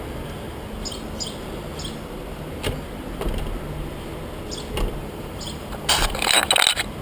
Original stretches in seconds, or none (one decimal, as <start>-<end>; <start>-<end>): 0.0-5.0; 6.5-7.0